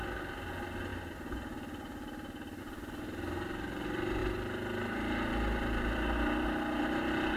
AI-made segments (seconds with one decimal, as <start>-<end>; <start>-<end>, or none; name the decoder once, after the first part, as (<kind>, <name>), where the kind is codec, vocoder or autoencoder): 0.9-2.6 (vocoder, BigVGAN v2)